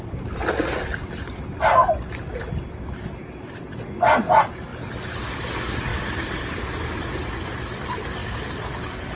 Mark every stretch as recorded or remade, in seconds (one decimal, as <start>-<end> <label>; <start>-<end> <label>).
0.0-5.9 recorded; 5.9-6.6 remade; 6.6-9.2 recorded